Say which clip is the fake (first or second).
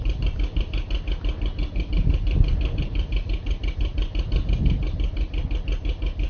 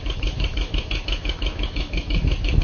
second